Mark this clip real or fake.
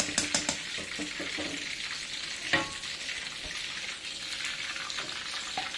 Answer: real